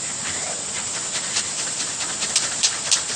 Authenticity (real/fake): fake